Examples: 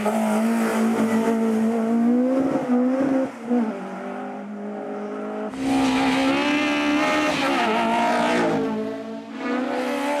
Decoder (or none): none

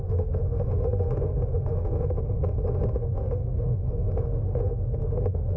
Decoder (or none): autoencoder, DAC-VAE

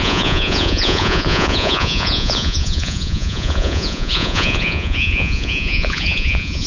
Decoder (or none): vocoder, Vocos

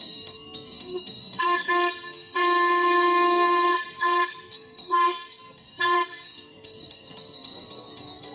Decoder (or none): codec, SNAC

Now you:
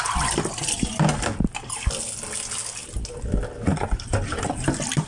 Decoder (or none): none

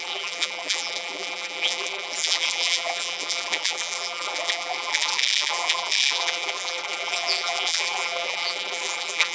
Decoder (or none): vocoder, BigVGAN v2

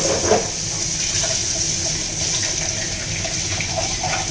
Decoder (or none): none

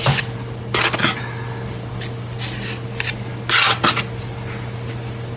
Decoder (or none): none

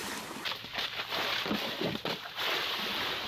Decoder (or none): none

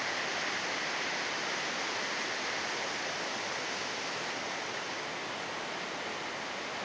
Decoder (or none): none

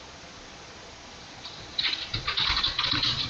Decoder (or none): vocoder, Vocos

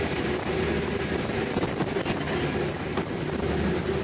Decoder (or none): none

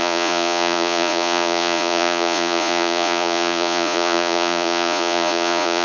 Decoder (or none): vocoder, Vocos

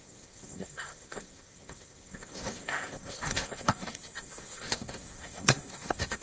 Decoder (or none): codec, SNAC